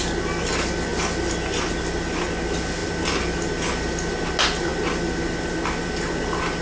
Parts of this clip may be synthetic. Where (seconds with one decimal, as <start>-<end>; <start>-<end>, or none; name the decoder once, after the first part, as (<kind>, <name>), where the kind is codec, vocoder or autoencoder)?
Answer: none